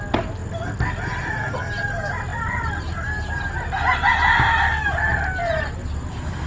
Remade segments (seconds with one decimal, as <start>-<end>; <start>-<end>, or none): none